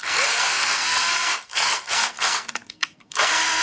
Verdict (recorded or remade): remade